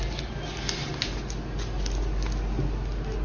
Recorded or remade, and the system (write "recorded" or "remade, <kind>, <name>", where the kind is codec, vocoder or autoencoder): recorded